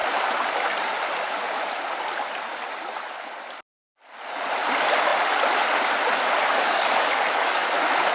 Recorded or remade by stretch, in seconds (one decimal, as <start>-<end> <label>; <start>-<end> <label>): 0.0-6.4 recorded; 6.4-7.6 remade; 7.6-8.1 recorded